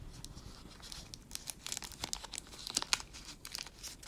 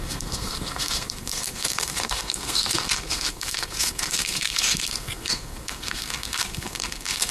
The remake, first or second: second